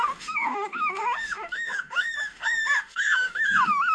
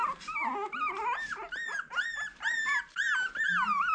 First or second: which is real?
second